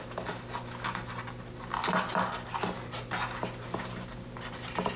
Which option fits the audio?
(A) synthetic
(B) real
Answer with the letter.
B